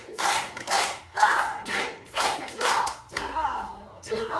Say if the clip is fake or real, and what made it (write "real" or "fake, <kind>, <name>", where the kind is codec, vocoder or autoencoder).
fake, codec, SNAC